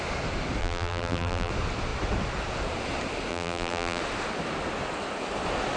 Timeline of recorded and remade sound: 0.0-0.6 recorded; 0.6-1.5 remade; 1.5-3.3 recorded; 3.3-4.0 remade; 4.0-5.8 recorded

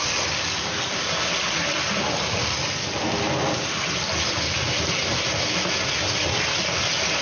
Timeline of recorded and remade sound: 0.0-3.4 recorded; 3.4-4.0 remade; 4.0-7.2 recorded

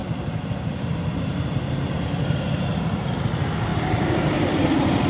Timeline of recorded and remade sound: 0.0-3.1 remade; 3.1-3.7 recorded; 3.7-4.5 remade; 4.5-5.1 recorded

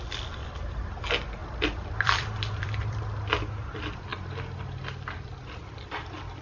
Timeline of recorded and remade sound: 0.0-0.4 recorded; 0.4-0.9 remade; 0.9-1.4 recorded; 1.4-3.0 remade; 3.0-4.1 recorded; 4.1-5.9 remade; 5.9-6.4 recorded

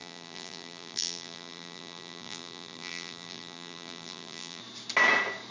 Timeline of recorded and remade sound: 0.0-4.6 remade; 4.6-5.5 recorded

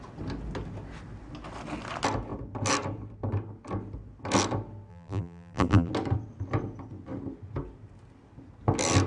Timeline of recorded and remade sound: 0.0-4.9 recorded; 4.9-5.9 remade; 5.9-9.1 recorded

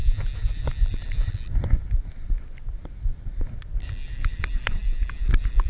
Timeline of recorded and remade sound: 0.0-5.7 recorded

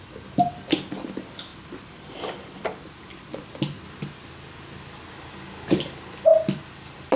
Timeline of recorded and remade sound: 0.0-1.5 recorded; 1.5-3.3 remade; 3.3-7.2 recorded